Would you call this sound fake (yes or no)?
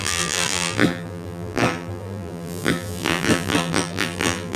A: yes